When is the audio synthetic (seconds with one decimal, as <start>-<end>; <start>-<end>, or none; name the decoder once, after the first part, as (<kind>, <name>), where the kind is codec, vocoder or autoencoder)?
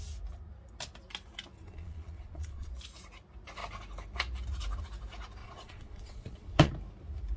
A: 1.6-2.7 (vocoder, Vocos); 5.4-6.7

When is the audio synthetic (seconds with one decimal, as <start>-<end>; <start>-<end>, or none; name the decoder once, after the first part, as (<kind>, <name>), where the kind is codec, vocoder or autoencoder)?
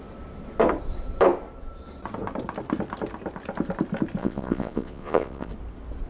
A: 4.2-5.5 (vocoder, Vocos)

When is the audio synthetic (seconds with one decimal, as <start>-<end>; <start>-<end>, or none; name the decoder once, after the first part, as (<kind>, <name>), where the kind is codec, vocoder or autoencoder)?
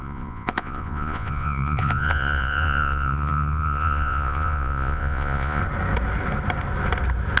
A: 0.0-5.6 (vocoder, Vocos)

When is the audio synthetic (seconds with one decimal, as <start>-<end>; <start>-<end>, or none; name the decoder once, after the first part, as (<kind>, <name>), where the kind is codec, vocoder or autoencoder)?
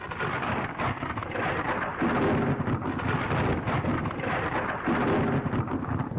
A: none